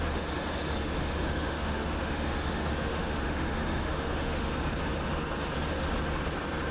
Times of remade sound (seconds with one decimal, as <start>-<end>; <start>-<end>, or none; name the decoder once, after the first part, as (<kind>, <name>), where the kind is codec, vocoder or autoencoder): 0.8-4.5 (autoencoder, DAC-VAE)